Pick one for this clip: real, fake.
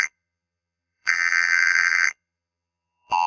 fake